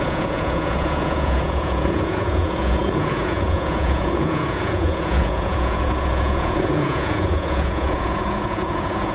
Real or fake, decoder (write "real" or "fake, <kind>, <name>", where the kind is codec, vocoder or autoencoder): fake, vocoder, Vocos